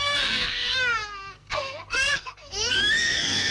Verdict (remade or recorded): remade